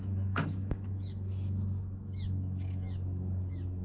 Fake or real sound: fake